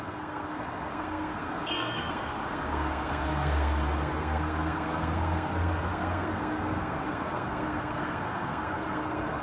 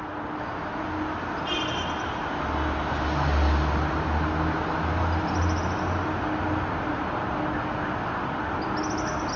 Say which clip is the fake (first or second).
first